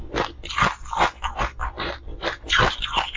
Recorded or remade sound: recorded